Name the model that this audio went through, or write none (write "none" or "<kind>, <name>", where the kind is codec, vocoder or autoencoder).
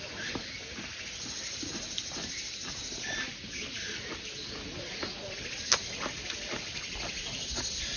none